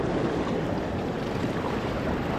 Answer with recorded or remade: remade